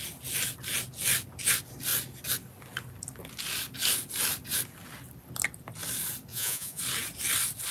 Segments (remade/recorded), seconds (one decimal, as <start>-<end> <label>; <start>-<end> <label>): 0.0-6.3 recorded; 6.3-6.8 remade; 6.8-7.7 recorded